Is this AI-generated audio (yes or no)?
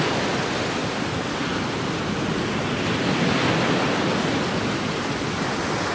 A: no